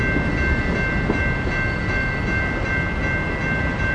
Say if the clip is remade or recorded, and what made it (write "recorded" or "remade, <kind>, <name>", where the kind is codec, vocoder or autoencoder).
recorded